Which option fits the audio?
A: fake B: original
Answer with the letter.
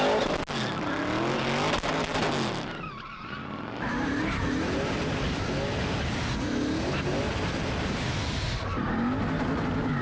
B